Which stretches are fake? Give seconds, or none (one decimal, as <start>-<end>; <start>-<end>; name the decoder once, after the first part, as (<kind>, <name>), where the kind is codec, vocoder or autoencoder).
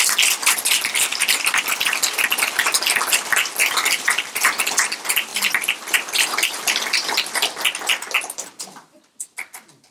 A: 1.1-1.8 (vocoder, BigVGAN v2); 3.6-4.5; 5.3-7.5